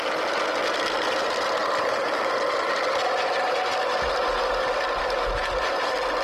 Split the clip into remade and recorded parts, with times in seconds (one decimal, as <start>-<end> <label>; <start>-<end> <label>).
0.0-6.2 recorded